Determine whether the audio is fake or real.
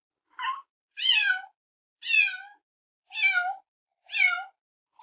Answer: real